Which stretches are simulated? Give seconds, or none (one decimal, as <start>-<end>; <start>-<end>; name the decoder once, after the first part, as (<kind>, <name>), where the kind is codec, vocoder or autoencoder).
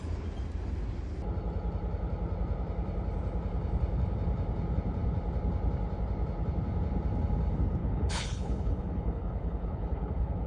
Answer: 7.8-10.5 (codec, HILCodec)